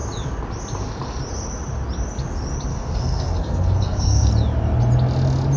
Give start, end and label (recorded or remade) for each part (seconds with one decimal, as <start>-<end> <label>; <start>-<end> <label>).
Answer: 0.0-2.7 recorded; 2.7-4.3 remade; 4.3-5.6 recorded